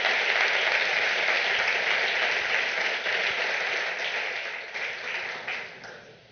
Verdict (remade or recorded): recorded